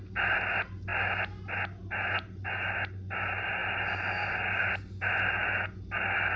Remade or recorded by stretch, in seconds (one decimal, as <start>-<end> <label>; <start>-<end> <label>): 0.0-6.4 recorded